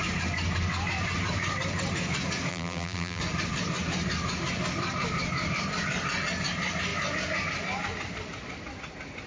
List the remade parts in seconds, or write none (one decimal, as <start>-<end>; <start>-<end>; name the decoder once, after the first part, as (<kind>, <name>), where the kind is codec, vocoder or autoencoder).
2.5-3.2 (vocoder, BigVGAN v2)